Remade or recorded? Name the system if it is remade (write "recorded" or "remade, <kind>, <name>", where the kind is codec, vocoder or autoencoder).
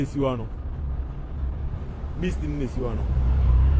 remade, vocoder, BigVGAN v2